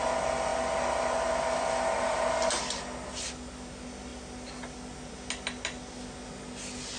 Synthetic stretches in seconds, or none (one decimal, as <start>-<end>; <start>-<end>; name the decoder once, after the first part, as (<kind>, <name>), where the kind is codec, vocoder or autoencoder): none